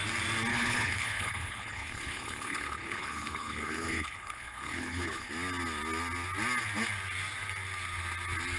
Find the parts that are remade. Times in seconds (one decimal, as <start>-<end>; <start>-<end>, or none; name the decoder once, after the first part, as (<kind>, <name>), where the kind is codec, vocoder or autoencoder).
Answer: 0.5-5.3 (codec, HILCodec)